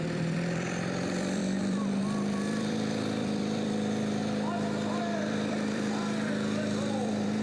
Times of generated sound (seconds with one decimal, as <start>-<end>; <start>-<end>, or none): 0.0-4.2; 5.0-7.4